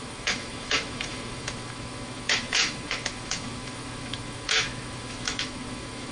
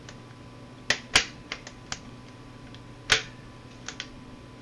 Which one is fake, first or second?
first